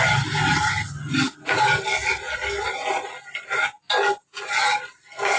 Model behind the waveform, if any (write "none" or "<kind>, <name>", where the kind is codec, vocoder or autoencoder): none